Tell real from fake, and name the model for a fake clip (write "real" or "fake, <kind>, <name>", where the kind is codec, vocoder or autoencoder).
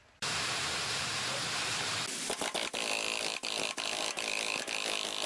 real